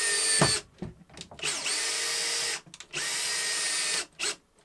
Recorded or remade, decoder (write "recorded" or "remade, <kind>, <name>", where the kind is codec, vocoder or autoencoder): recorded